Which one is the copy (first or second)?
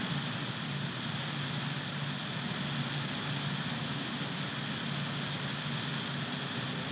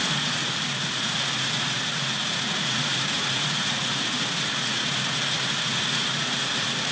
second